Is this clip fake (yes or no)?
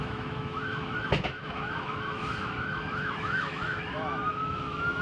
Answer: yes